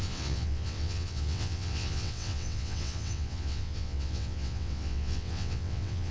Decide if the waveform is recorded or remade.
remade